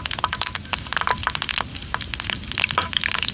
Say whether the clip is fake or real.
real